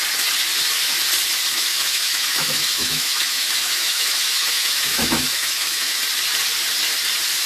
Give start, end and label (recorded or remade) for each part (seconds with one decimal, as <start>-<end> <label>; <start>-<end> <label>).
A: 0.0-1.5 recorded; 1.5-6.0 remade; 6.0-7.5 recorded